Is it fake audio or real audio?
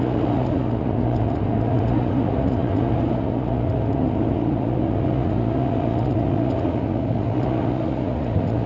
fake